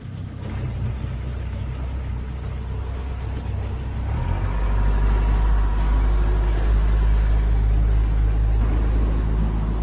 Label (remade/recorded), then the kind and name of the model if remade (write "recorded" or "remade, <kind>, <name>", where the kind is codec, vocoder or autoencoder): recorded